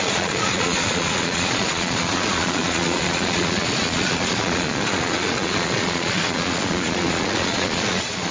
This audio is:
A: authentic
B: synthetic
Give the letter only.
B